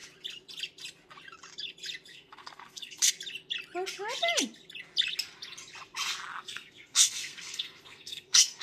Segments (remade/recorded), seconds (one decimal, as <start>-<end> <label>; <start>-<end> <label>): 0.0-2.1 recorded; 2.1-3.1 remade; 3.1-6.3 recorded; 6.3-8.6 remade